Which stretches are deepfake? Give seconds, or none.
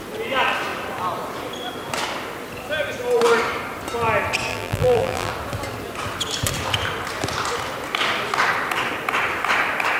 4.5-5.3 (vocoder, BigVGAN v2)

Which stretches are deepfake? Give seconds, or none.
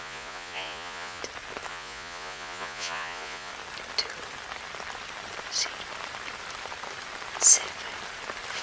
0.0-1.2 (vocoder, Vocos); 1.7-3.5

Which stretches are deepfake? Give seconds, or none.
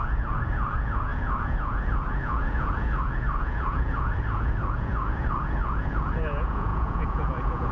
0.0-7.7 (vocoder, Vocos)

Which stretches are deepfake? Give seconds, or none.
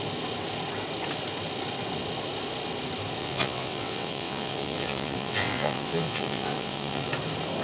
3.2-7.1 (vocoder, WaveNeXt)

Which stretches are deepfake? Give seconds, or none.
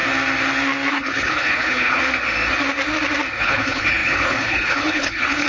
0.9-2.0 (codec, HILCodec); 3.4-5.5